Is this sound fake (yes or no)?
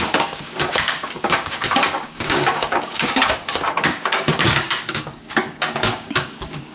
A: yes